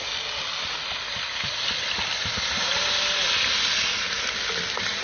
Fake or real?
real